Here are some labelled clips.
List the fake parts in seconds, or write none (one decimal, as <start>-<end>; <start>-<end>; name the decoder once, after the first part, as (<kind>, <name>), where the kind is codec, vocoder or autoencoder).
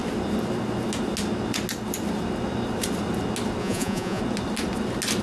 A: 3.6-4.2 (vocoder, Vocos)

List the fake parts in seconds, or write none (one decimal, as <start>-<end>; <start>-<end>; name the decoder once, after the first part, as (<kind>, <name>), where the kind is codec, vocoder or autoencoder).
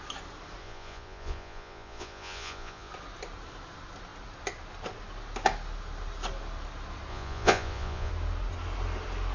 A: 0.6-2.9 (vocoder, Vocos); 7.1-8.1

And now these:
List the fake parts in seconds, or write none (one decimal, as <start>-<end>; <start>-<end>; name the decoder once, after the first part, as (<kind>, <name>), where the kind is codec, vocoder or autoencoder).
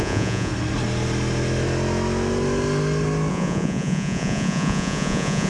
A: 0.0-0.5 (vocoder, Vocos); 3.3-5.5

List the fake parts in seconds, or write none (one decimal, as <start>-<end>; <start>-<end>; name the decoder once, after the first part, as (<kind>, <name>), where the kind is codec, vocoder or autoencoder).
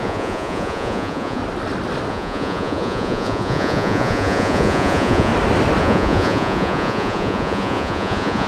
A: 0.0-1.4 (vocoder, Vocos); 2.1-5.3; 5.8-8.5